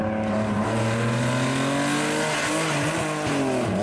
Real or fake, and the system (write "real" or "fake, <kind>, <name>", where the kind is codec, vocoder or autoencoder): real